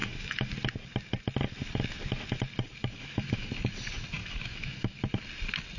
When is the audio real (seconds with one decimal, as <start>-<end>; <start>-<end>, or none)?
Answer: 0.5-2.8; 3.5-4.2; 5.0-5.8